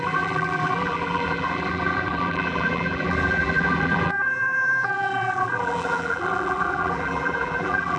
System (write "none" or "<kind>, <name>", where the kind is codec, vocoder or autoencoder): vocoder, BigVGAN v2